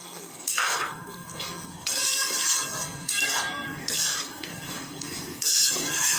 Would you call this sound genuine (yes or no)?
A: no